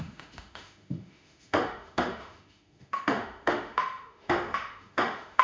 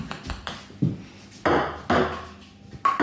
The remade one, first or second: first